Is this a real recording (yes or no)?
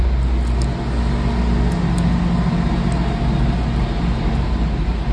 yes